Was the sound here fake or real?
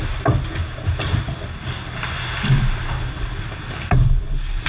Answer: real